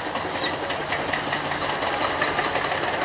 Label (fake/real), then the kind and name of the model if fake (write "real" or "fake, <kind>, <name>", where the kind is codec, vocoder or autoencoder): real